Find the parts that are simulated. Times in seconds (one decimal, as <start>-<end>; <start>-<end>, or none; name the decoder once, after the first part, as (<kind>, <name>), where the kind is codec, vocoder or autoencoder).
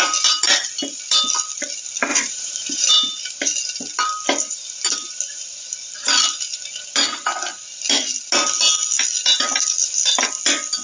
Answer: 2.1-2.9 (vocoder, BigVGAN v2)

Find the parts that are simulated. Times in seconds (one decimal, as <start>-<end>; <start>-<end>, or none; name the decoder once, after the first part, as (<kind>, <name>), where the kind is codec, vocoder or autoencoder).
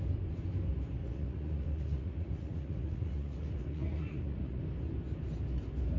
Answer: 1.0-4.6 (vocoder, Vocos)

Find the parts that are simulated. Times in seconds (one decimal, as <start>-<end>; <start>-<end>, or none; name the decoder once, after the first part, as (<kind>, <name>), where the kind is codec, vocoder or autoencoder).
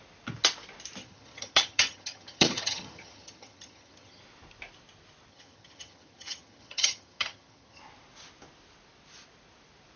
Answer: 1.0-4.2 (vocoder, HiFi-GAN); 5.3-7.8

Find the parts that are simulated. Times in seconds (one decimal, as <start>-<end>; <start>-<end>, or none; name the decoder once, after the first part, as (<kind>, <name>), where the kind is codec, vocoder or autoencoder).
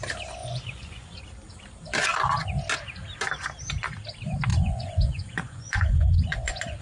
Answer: 0.4-1.2 (vocoder, Vocos); 4.5-6.8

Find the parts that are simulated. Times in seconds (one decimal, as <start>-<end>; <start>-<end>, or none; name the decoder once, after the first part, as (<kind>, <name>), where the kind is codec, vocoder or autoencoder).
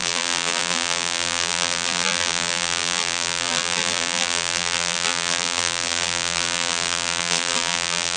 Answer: 0.0-8.2 (vocoder, BigVGAN v2)